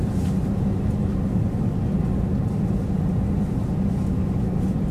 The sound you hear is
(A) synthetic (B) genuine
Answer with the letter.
B